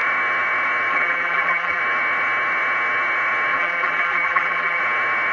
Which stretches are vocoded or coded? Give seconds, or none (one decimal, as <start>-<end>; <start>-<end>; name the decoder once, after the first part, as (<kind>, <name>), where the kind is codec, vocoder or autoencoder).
0.9-1.8 (vocoder, BigVGAN v2); 3.5-4.8